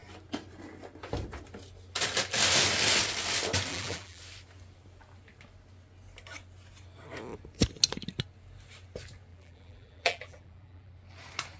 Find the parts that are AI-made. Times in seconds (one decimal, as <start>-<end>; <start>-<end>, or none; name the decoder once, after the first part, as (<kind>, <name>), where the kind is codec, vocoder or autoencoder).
3.7-4.2 (vocoder, BigVGAN v2); 9.3-10.9